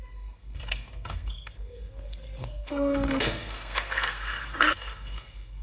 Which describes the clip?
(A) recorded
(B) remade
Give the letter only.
B